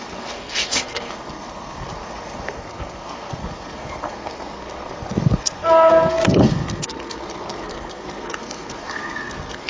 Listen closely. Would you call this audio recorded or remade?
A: remade